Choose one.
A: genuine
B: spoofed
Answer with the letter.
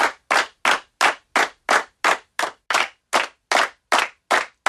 A